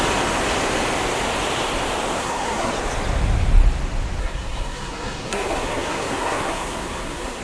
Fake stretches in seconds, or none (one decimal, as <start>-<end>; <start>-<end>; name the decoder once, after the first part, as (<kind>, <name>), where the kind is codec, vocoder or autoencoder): 2.2-2.7 (codec, SNAC); 4.2-7.4